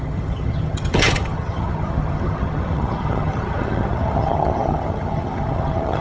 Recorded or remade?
remade